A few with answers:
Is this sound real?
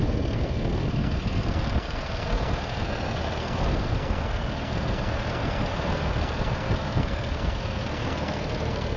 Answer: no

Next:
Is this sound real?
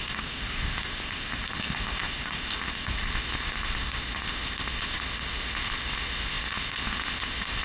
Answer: no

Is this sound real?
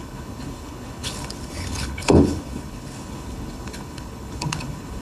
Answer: no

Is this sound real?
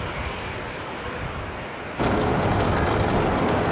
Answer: yes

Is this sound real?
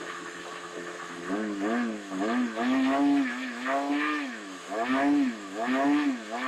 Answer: no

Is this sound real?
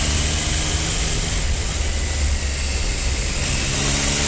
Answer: yes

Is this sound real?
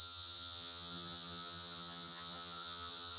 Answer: no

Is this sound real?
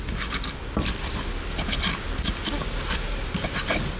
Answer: yes